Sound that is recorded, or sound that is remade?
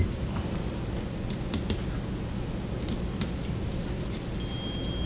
recorded